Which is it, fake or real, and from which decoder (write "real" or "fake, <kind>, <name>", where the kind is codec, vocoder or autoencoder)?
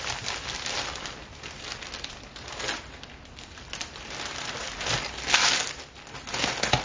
real